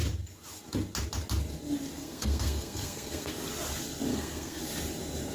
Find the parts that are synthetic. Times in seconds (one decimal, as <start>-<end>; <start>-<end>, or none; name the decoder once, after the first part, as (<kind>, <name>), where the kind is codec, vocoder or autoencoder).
2.0-3.3 (codec, SNAC); 4.1-4.6